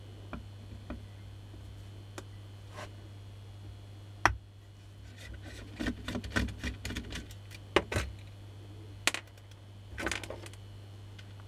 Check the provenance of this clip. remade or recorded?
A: recorded